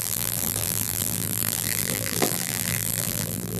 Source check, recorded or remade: remade